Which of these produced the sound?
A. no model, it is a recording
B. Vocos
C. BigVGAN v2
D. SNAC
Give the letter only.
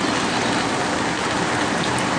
A